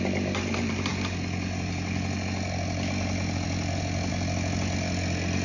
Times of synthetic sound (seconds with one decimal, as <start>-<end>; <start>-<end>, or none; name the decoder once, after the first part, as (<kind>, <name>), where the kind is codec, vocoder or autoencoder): none